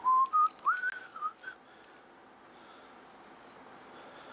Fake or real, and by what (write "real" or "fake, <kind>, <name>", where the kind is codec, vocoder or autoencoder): real